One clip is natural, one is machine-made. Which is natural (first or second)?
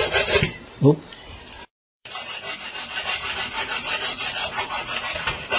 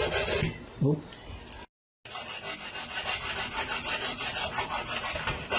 second